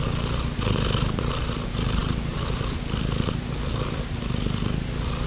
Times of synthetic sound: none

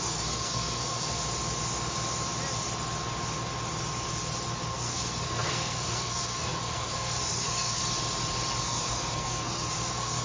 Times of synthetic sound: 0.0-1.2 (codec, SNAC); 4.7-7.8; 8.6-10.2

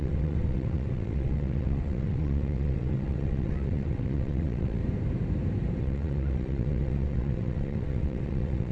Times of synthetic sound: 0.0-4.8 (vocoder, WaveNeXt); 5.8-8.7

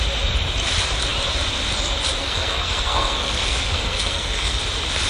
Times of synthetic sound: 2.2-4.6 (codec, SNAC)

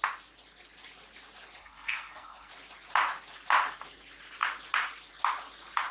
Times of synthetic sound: 1.6-2.5 (codec, SNAC)

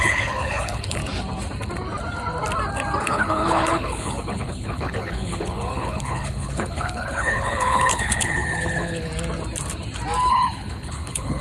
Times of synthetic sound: 0.0-1.0 (codec, HILCodec); 3.0-9.1; 10.3-11.4